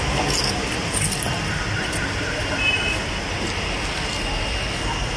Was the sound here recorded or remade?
recorded